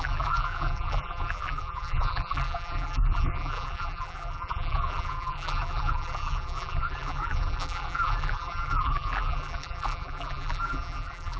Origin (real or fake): fake